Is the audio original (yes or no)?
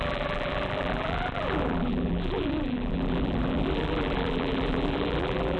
no